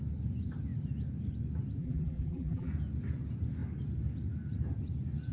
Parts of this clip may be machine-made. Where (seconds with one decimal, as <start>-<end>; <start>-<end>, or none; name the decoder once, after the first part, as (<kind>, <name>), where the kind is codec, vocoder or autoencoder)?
1.8-2.7 (vocoder, BigVGAN v2)